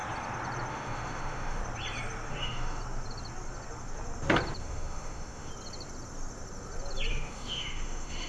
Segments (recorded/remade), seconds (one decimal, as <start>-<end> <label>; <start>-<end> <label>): 0.0-0.7 recorded; 0.7-1.6 remade; 1.6-2.3 recorded; 2.3-2.8 remade; 2.8-4.6 recorded; 4.6-5.5 remade; 5.5-7.1 recorded; 7.1-8.3 remade